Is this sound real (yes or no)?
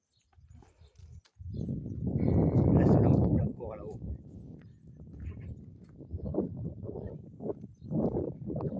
yes